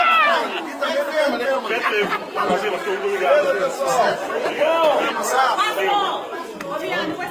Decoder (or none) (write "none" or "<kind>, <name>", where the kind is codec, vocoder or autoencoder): none